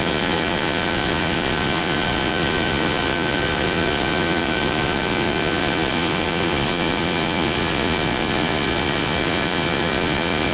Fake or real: fake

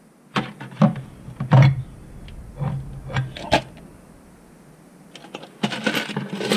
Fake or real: real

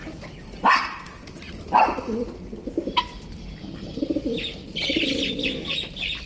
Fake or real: real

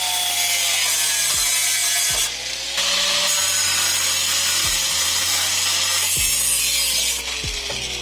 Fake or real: real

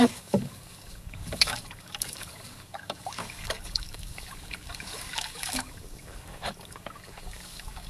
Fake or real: fake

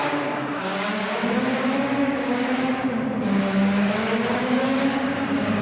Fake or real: fake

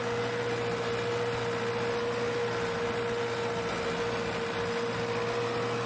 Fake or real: real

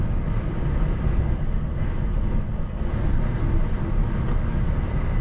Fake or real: real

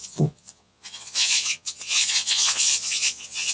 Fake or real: fake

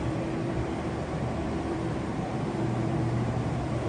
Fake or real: fake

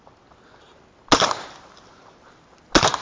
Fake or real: real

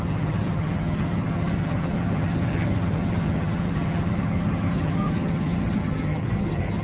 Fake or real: fake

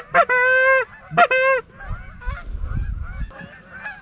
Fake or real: real